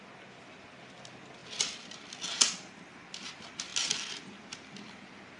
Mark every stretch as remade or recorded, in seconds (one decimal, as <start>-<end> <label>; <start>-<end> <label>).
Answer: 0.0-5.4 recorded